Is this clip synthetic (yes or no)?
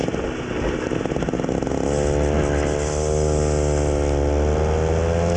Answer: no